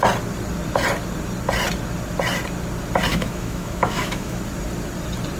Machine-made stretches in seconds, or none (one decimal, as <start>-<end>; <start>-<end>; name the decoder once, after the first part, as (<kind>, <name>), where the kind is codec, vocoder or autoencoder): 3.1-4.4 (autoencoder, DAC-VAE)